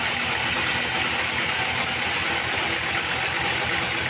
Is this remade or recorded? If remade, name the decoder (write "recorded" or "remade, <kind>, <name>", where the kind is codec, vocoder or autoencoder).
recorded